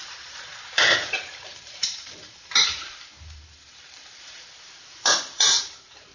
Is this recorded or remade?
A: remade